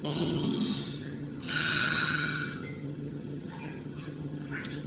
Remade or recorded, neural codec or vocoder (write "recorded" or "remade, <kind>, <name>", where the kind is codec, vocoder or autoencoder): remade, vocoder, HiFi-GAN